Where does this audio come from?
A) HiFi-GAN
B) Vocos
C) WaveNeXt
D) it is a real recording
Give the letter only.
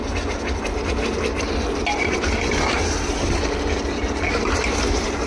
D